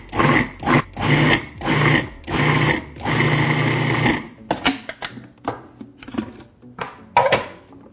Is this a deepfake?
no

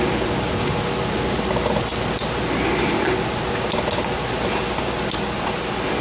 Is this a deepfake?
no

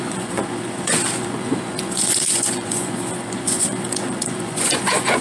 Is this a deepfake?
yes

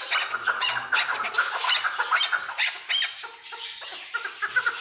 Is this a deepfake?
no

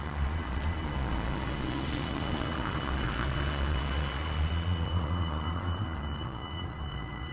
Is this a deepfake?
yes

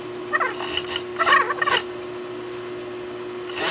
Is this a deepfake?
no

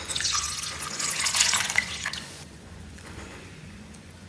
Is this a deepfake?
yes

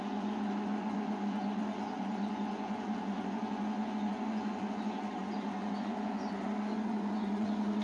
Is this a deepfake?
yes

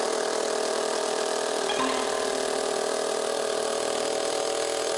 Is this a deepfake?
no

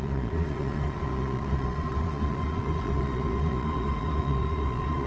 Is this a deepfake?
yes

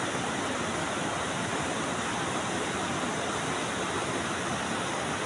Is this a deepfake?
no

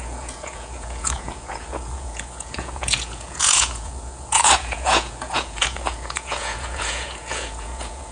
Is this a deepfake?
yes